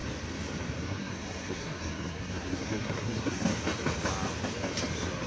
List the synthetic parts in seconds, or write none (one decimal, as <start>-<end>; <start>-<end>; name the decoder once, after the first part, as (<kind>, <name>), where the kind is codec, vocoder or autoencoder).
0.8-3.5 (codec, SNAC)